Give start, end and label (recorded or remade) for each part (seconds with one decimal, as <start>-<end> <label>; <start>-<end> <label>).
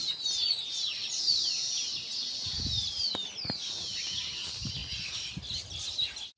0.0-6.4 recorded